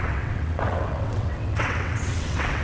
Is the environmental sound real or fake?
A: fake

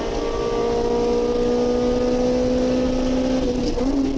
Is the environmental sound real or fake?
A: real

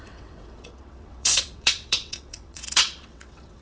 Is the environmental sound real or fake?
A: fake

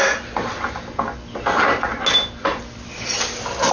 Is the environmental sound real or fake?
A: real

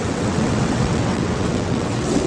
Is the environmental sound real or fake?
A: fake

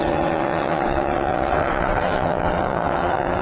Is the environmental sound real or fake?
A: fake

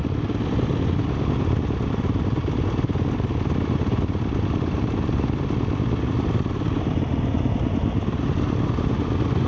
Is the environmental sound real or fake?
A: real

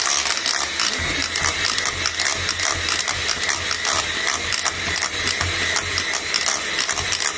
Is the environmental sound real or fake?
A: real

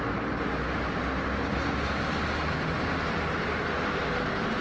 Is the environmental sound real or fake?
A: real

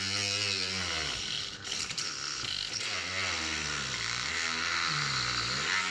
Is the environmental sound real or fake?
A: real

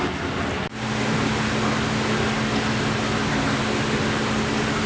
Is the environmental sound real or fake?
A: real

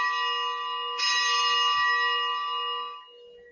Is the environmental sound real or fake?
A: real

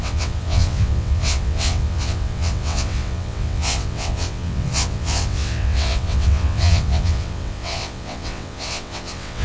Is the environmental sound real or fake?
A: fake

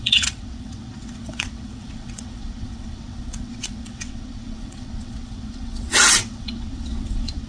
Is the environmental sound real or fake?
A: fake